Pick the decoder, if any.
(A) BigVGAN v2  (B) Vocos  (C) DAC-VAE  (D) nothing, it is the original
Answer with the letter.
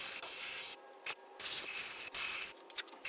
D